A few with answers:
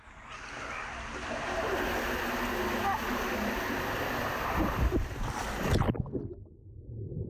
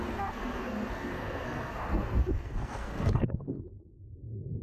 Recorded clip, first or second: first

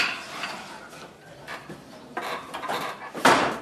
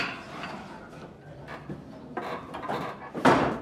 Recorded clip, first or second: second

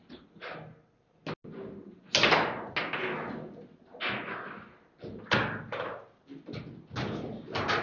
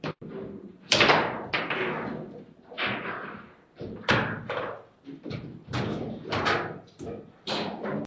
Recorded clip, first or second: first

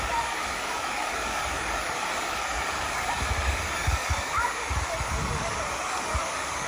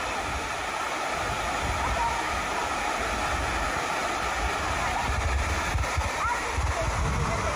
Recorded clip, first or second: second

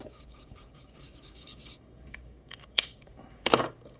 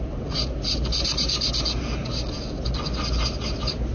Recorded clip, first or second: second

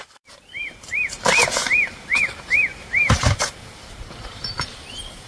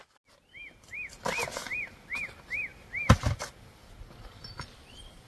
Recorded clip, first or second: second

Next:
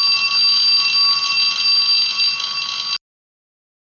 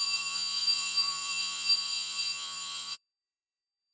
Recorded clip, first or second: first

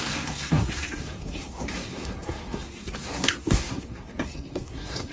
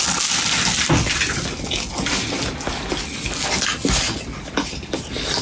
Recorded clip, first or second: second